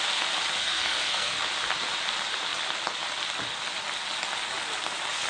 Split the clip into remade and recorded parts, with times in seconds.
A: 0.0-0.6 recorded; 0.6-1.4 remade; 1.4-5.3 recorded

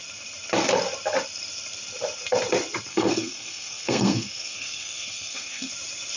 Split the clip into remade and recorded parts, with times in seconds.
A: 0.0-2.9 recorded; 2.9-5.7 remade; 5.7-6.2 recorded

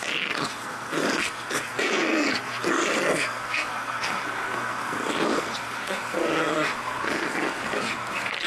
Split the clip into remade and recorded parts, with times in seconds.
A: 0.0-8.5 remade

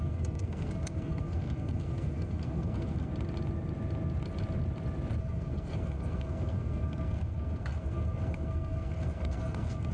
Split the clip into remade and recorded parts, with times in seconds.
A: 0.0-3.1 remade; 3.1-5.2 recorded; 5.2-9.9 remade